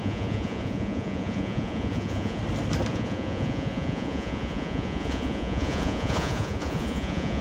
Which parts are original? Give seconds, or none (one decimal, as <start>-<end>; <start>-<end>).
2.4-2.9